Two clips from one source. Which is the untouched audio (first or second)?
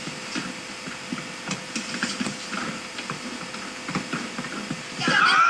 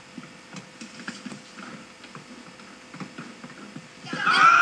second